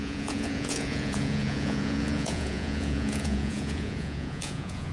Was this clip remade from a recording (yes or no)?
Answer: yes